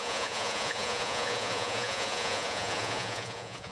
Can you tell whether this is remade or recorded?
remade